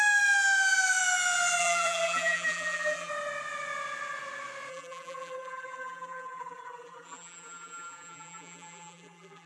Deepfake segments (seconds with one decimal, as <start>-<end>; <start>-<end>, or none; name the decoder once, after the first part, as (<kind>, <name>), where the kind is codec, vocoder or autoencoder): 1.6-3.1 (vocoder, BigVGAN v2); 4.7-9.5

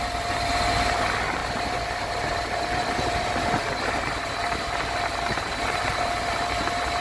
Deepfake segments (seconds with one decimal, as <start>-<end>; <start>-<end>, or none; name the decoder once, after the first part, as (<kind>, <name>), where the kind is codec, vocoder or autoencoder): none

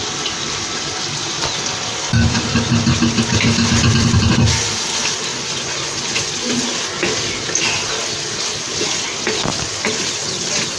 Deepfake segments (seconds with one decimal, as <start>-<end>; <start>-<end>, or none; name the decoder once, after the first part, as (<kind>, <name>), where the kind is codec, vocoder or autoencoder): 5.3-6.3 (vocoder, Vocos)

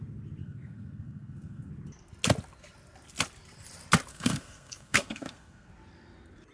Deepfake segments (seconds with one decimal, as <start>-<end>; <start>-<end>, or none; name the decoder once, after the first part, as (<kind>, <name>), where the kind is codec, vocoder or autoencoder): 0.4-1.7 (codec, SNAC); 4.1-5.7